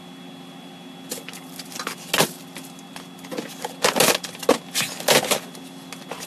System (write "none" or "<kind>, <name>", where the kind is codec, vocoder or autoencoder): none